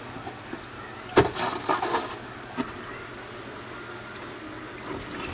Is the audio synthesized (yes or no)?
no